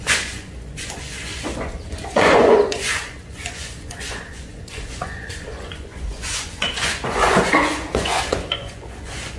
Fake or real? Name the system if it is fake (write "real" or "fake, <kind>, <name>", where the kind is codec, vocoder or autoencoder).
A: fake, vocoder, Vocos